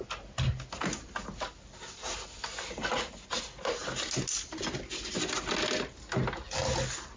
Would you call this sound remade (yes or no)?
no